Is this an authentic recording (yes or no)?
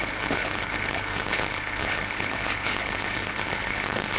no